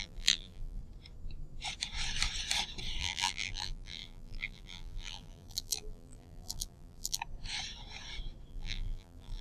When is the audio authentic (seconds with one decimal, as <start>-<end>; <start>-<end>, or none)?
0.8-3.0; 7.2-8.5

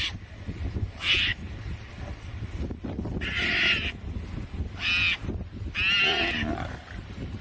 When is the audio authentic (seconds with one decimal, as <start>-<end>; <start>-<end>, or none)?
0.0-1.3; 1.9-7.4